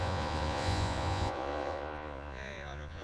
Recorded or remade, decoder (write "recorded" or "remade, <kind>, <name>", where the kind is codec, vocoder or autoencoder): remade, vocoder, Vocos